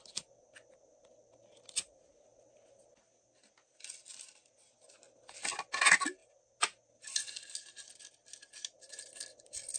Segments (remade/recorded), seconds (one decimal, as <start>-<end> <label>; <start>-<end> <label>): 0.0-9.8 recorded